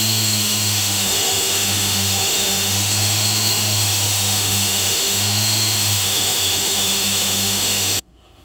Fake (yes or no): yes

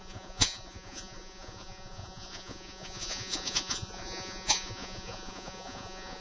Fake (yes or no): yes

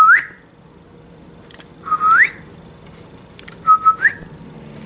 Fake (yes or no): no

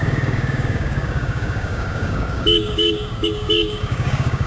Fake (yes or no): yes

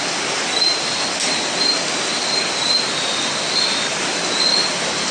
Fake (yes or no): no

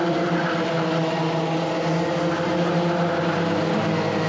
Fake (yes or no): no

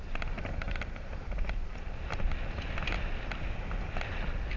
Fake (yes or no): no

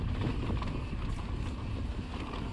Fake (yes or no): no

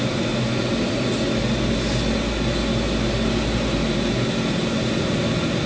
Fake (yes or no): no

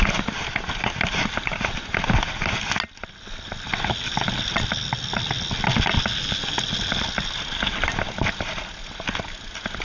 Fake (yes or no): no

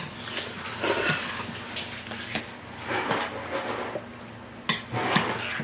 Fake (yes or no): no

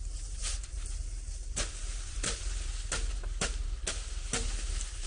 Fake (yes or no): no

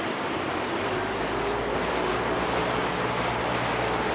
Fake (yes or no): no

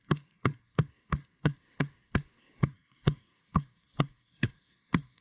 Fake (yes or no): yes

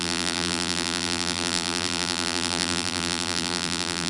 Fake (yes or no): yes